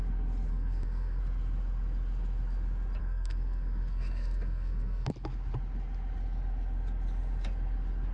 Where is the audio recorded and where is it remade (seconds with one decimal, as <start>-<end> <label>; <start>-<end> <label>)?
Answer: 0.0-0.5 recorded; 0.5-1.2 remade; 1.2-3.0 recorded; 3.0-5.1 remade; 5.1-8.1 recorded